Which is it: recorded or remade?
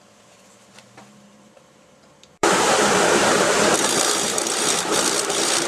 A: remade